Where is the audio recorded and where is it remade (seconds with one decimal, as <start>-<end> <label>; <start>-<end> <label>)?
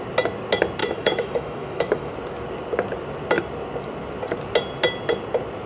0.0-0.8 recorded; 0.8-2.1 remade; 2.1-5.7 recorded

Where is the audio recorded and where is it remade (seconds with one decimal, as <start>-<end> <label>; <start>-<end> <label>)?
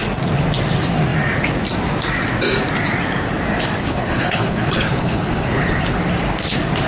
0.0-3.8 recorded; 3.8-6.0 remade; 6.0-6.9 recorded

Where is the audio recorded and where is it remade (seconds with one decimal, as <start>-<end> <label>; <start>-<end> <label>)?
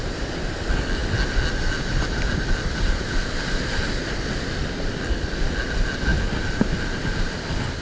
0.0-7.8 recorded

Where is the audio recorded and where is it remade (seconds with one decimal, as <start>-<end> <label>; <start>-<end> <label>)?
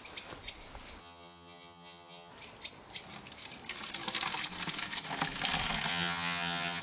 0.0-1.0 recorded; 1.0-2.3 remade; 2.3-5.9 recorded; 5.9-6.8 remade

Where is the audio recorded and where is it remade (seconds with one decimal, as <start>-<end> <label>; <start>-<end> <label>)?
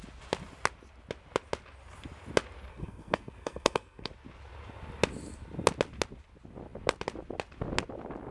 0.0-2.7 recorded; 2.7-4.1 remade; 4.1-8.3 recorded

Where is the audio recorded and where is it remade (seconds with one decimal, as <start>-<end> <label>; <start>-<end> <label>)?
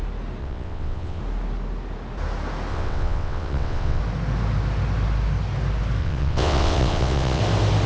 0.0-0.4 recorded; 0.4-1.2 remade; 1.2-2.7 recorded; 2.7-4.0 remade; 4.0-6.0 recorded; 6.0-7.4 remade; 7.4-7.9 recorded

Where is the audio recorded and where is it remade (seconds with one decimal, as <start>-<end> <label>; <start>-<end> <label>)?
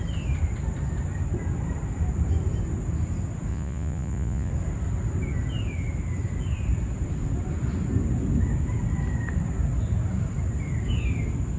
0.0-3.5 recorded; 3.5-4.5 remade; 4.5-11.6 recorded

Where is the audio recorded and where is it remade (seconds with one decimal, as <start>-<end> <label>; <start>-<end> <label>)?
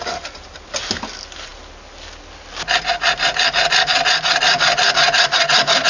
0.0-5.9 recorded